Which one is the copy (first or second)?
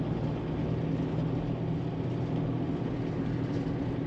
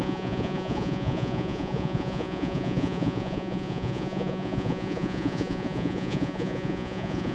second